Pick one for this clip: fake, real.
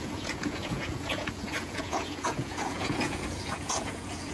fake